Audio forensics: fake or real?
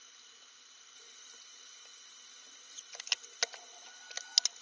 real